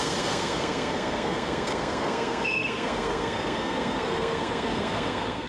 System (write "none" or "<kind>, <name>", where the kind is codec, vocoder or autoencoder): codec, SNAC